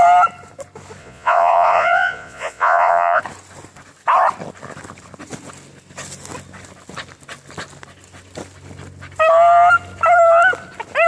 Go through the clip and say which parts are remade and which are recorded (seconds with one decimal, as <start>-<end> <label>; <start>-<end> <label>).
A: 0.0-1.0 recorded; 1.0-3.2 remade; 3.2-11.1 recorded